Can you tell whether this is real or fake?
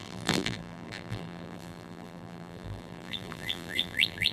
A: fake